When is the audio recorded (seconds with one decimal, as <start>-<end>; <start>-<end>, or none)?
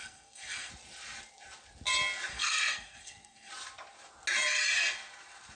0.7-2.3; 3.5-5.5